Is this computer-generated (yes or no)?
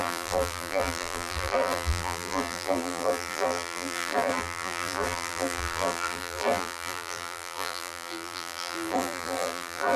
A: yes